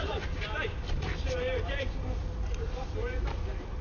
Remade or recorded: recorded